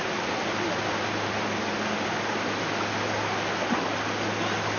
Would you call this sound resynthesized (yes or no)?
no